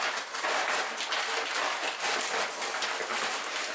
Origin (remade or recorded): recorded